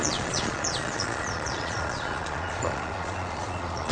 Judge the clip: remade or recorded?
remade